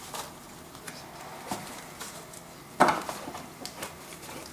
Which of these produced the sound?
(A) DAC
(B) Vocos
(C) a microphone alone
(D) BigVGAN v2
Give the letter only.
C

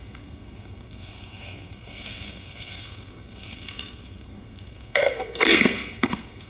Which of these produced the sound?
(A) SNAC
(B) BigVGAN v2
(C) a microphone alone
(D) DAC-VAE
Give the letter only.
A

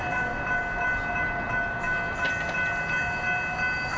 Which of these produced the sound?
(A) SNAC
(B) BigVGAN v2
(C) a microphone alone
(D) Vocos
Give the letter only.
C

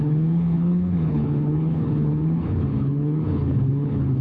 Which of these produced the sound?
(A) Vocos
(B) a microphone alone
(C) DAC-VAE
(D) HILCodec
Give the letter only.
D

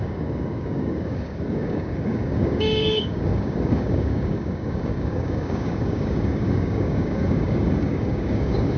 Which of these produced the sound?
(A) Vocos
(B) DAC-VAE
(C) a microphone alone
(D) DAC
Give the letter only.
D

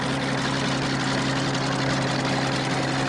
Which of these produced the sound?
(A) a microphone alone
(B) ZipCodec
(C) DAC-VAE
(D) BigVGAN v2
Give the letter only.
A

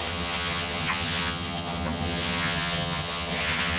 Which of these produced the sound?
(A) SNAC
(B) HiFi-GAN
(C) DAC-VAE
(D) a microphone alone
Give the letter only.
B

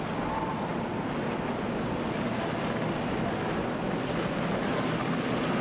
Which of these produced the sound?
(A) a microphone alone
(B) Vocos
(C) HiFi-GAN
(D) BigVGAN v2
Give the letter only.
A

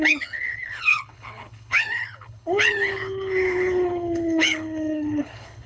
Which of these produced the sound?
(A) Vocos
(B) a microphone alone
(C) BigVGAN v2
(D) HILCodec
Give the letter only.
D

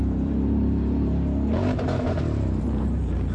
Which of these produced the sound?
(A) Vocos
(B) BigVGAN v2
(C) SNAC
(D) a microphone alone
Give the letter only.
B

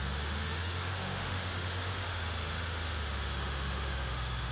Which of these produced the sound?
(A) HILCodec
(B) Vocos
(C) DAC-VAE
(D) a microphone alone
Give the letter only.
C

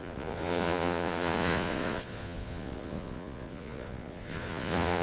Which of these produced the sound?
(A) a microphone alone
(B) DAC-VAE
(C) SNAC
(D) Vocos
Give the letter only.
D